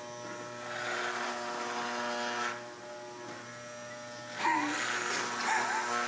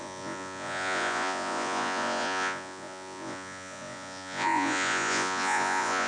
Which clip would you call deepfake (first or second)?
second